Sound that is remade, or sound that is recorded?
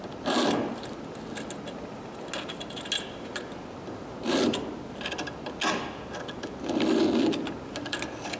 recorded